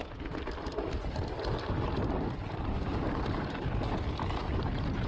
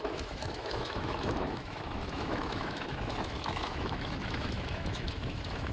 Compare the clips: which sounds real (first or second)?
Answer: first